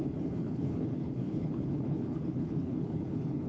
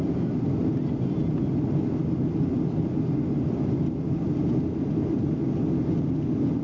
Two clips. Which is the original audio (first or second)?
second